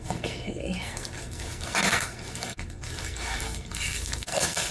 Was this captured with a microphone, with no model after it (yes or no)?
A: no